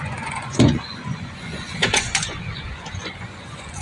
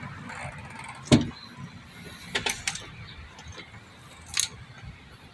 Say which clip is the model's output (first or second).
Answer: first